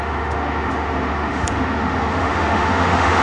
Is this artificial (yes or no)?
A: yes